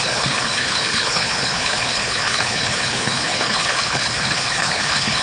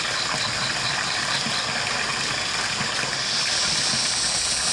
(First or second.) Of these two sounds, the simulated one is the first